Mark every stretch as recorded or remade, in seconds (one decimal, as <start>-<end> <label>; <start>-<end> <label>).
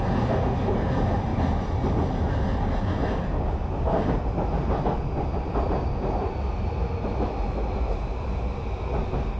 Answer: 0.0-9.4 recorded